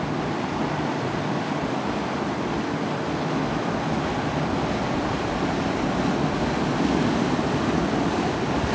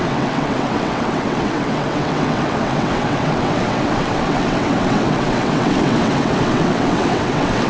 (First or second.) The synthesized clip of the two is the second